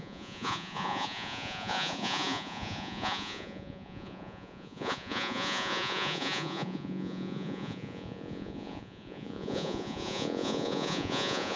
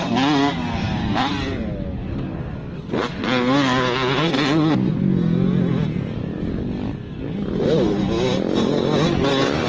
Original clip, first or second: second